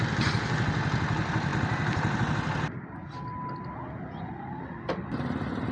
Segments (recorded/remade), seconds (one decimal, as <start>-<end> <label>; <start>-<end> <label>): 0.0-5.7 recorded